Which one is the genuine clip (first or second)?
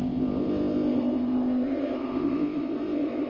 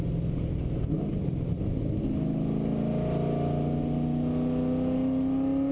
second